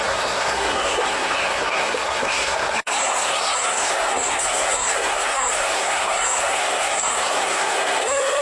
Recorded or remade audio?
remade